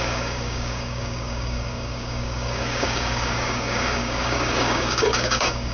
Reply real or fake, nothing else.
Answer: fake